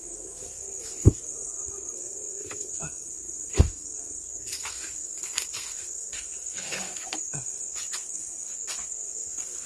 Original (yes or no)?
no